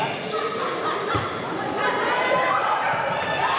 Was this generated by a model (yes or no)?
no